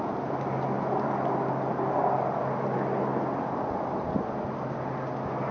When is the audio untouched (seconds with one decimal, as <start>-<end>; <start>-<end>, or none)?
0.0-5.5